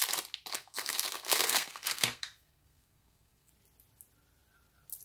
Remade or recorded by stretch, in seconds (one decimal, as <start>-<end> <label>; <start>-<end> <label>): 0.0-0.5 recorded; 0.5-3.5 remade; 3.5-5.0 recorded